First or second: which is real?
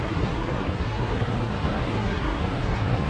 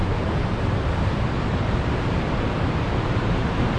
second